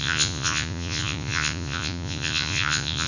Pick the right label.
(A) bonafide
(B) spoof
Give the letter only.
B